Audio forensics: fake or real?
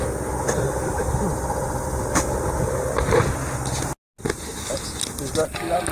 real